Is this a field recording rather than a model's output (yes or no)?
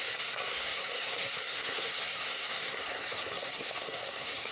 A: no